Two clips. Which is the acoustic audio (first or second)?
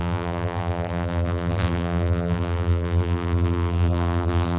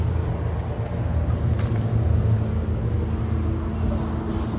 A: second